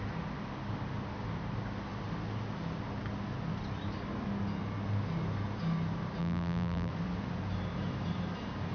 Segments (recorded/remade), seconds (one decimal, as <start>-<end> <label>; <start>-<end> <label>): 0.0-6.2 recorded; 6.2-6.9 remade; 6.9-8.7 recorded